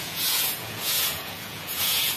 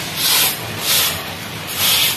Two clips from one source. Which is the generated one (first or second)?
first